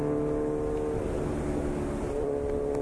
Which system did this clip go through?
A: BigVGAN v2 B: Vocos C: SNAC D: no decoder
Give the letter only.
D